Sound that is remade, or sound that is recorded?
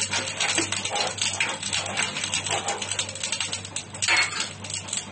recorded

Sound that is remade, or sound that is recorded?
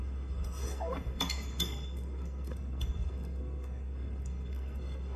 remade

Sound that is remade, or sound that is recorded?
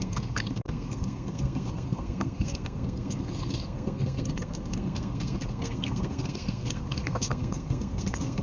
remade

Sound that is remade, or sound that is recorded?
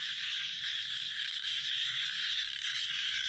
remade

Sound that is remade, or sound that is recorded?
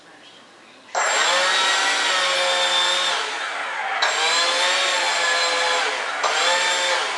recorded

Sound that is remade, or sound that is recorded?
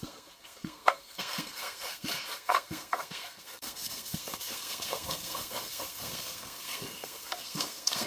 remade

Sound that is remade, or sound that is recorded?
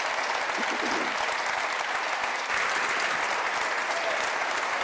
recorded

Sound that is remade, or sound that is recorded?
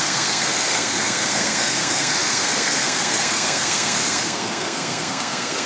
remade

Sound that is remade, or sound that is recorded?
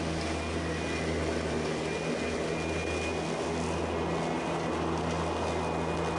recorded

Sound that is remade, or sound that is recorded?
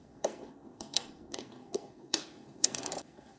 remade